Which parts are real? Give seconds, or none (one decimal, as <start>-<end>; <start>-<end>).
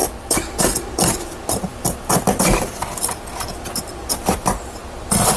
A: none